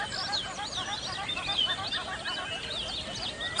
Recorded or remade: recorded